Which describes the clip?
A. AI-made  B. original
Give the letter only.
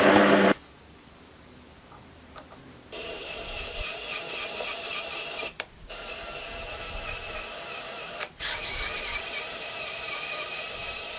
A